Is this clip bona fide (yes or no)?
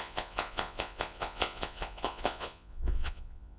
no